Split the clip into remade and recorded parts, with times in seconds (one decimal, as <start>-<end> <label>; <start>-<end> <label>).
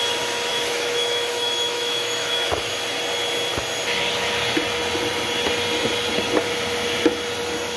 0.0-0.5 recorded; 0.5-2.5 remade; 2.5-7.8 recorded